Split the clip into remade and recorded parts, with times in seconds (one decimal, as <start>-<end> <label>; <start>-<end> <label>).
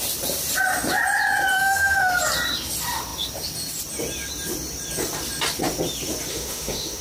0.0-1.5 recorded; 1.5-2.1 remade; 2.1-6.3 recorded; 6.3-7.0 remade